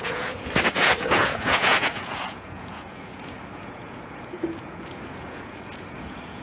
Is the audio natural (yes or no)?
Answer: no